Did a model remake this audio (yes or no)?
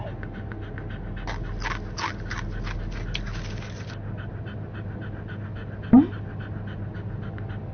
no